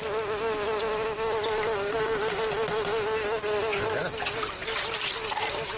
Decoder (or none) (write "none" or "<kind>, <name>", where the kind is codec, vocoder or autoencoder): none